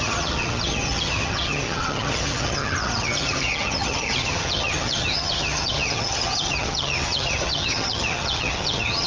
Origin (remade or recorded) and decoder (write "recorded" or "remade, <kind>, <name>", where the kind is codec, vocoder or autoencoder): remade, vocoder, HiFi-GAN